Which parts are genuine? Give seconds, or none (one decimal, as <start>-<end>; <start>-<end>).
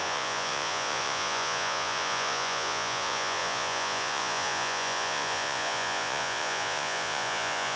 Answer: none